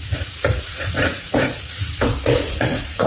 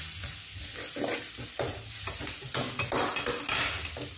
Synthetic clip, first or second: first